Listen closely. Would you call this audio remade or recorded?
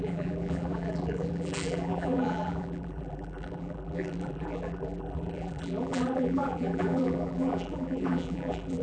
remade